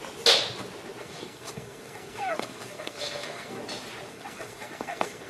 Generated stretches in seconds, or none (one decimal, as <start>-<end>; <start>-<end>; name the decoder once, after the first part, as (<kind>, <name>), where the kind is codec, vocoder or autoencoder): 1.0-3.6 (codec, SNAC); 4.1-5.3